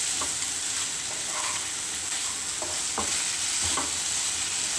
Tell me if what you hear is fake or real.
real